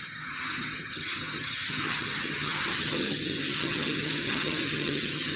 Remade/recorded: remade